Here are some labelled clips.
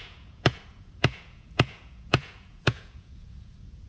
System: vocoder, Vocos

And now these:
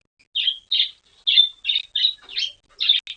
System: none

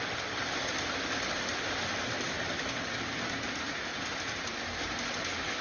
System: none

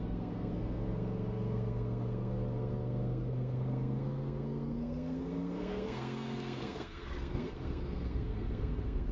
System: codec, SNAC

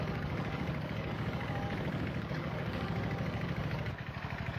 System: codec, DAC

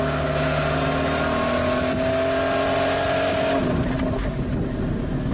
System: none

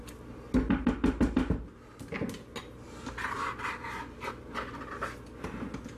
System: none